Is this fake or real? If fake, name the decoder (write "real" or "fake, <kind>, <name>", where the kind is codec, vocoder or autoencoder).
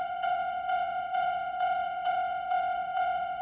fake, vocoder, WaveNeXt